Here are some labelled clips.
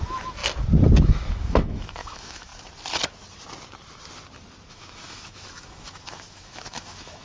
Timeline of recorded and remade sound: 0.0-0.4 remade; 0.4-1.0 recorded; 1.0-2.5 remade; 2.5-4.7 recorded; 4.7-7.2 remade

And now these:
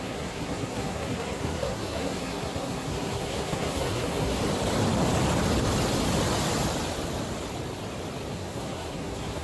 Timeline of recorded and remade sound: 0.0-4.4 remade; 4.4-8.3 recorded; 8.3-9.4 remade

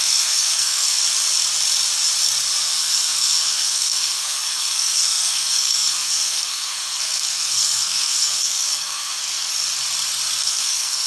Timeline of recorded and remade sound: 0.0-1.0 remade; 1.0-2.6 recorded; 2.6-9.5 remade; 9.5-10.4 recorded; 10.4-11.1 remade